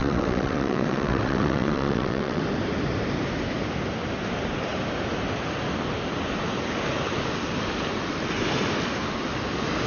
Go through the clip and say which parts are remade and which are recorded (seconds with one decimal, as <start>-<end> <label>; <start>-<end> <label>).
0.0-2.4 remade; 2.4-9.9 recorded